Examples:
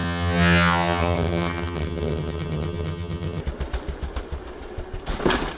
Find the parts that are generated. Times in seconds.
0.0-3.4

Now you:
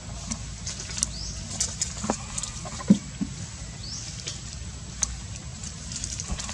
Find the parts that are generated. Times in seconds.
5.5-6.5